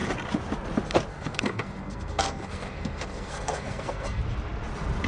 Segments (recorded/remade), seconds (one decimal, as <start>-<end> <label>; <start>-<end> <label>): 0.0-1.1 recorded; 1.1-4.2 remade; 4.2-5.1 recorded